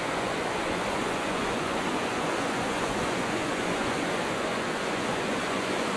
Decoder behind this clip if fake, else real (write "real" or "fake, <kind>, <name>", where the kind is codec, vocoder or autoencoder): fake, vocoder, Vocos